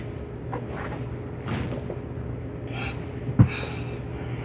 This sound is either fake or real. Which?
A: real